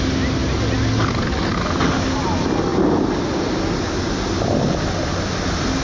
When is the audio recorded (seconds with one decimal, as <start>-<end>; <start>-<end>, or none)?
0.0-5.8